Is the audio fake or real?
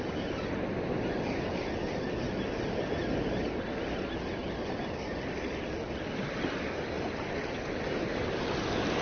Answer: real